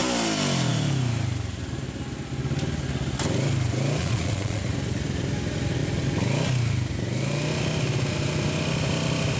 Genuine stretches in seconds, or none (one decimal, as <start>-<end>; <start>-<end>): 0.0-4.0; 4.6-9.4